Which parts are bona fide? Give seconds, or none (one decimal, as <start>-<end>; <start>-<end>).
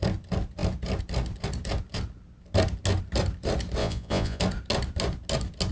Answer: 0.0-3.8; 4.4-5.7